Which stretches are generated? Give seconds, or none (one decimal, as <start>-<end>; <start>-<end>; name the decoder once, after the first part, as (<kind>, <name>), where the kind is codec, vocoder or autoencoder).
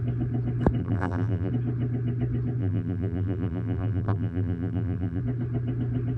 0.8-1.5 (vocoder, BigVGAN v2); 2.6-5.2